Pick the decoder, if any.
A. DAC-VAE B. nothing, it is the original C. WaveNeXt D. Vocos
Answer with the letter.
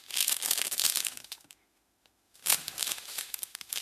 A